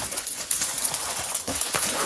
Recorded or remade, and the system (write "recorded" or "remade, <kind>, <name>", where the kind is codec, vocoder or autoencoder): remade, vocoder, Vocos